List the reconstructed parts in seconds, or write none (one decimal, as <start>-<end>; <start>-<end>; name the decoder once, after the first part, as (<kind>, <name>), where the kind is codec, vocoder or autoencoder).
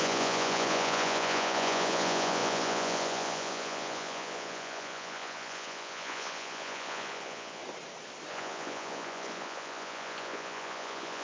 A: 0.0-7.6 (vocoder, Vocos); 8.3-11.2